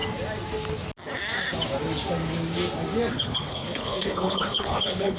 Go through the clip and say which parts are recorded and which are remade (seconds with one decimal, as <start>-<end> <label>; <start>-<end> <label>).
0.0-3.1 recorded; 3.1-5.2 remade